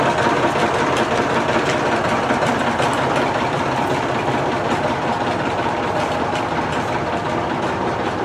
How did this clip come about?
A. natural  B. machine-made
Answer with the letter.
B